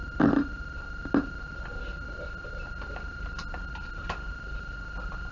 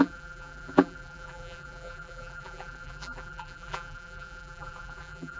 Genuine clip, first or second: first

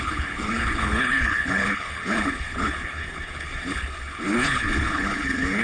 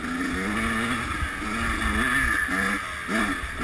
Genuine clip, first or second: second